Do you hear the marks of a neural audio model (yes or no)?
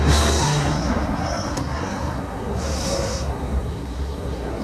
yes